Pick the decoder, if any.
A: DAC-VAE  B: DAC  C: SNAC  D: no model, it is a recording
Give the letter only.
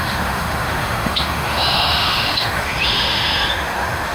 A